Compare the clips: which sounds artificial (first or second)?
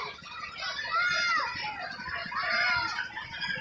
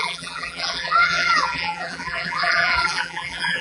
second